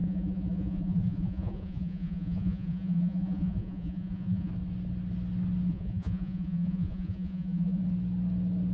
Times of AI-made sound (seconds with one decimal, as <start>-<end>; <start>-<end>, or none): 0.0-4.5; 5.7-7.8